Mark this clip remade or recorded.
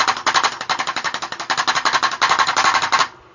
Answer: recorded